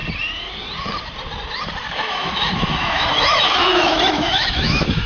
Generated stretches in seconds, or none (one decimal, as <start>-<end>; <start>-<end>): 1.9-5.1